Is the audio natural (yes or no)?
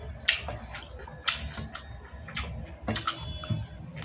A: yes